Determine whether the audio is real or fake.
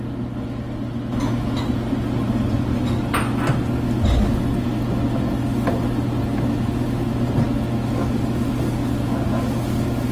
real